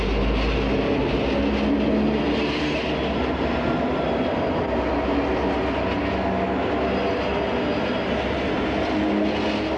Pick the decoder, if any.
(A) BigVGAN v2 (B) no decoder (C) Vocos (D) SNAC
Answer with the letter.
B